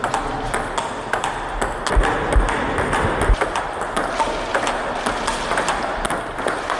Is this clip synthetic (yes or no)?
no